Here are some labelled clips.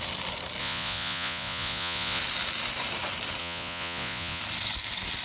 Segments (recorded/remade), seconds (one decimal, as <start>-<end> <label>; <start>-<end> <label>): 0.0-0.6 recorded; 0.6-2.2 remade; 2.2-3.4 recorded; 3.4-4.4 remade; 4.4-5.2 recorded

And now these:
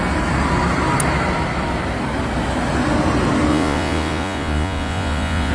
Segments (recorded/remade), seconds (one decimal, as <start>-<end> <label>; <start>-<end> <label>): 0.0-3.5 recorded; 3.5-5.5 remade

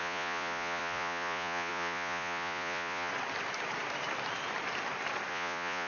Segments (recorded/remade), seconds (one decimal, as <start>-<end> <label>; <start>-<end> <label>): 0.0-3.1 remade; 3.1-5.3 recorded; 5.3-5.9 remade

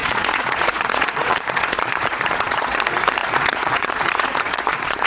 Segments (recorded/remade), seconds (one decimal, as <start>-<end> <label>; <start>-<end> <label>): 0.0-2.8 remade; 2.8-3.2 recorded; 3.2-5.1 remade

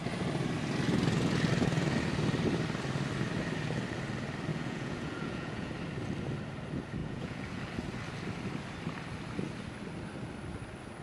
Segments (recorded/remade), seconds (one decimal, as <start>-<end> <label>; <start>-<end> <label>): 0.0-4.5 recorded; 4.5-5.7 remade; 5.7-7.0 recorded; 7.0-7.6 remade; 7.6-11.0 recorded

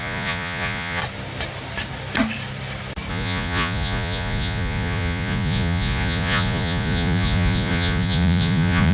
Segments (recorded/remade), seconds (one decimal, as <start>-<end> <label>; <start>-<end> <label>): 0.0-1.0 remade; 1.0-3.1 recorded; 3.1-8.9 remade